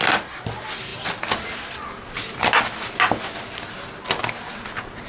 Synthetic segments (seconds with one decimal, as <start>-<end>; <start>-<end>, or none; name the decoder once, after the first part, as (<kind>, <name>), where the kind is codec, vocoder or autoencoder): none